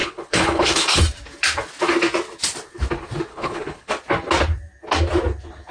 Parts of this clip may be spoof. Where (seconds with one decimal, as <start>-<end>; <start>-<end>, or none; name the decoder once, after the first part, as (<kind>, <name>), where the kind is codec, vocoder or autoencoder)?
0.0-1.0 (codec, HILCodec); 3.3-3.9